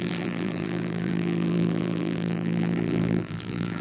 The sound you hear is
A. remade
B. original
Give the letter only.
A